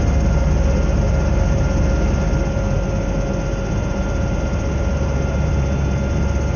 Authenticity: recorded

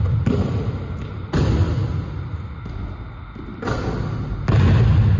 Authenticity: recorded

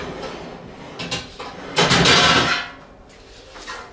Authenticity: recorded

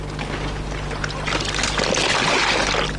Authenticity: recorded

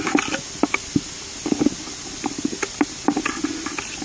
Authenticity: recorded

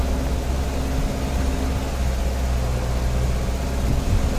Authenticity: recorded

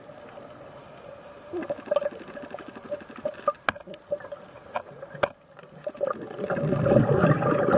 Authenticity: recorded